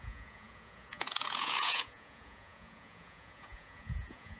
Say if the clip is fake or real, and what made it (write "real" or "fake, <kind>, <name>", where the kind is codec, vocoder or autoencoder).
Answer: fake, vocoder, Vocos